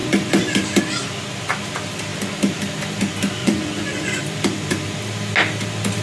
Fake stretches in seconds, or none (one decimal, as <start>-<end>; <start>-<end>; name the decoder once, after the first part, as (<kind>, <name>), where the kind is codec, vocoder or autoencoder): 3.4-4.2 (vocoder, Vocos)